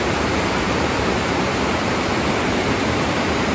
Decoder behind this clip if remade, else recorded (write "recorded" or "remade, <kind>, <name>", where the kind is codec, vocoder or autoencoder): remade, vocoder, BigVGAN v2